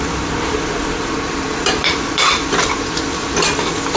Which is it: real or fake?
fake